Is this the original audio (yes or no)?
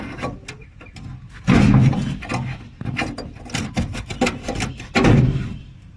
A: yes